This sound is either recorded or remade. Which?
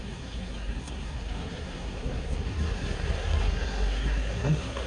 remade